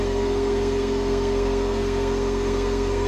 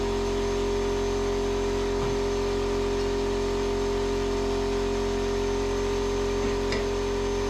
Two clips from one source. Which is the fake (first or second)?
first